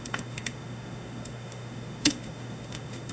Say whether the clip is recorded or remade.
remade